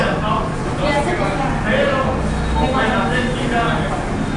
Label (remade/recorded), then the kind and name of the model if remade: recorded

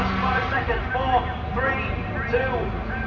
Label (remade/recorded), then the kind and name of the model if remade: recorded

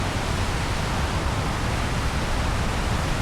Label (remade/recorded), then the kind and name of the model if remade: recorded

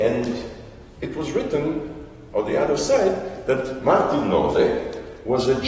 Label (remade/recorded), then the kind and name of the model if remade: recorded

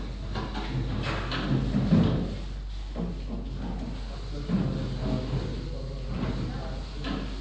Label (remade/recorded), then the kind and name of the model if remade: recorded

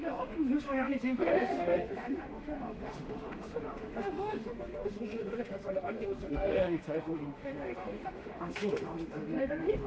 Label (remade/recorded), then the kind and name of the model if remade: remade, autoencoder, DAC-VAE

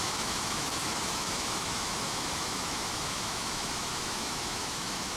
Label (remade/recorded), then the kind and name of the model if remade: remade, autoencoder, DAC-VAE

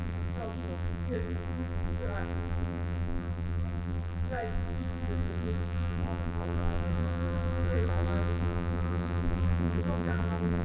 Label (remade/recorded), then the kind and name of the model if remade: remade, vocoder, BigVGAN v2